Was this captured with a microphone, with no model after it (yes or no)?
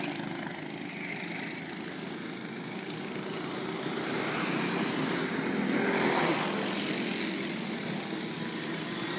yes